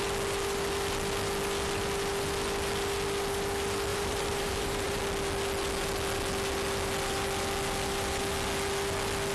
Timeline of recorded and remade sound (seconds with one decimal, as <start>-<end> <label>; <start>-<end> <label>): 0.0-3.9 recorded; 3.9-5.0 remade; 5.0-9.3 recorded